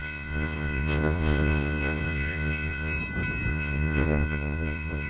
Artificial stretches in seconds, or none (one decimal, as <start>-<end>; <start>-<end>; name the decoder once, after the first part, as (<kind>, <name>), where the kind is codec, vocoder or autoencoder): 0.0-3.0 (vocoder, Vocos); 3.5-5.1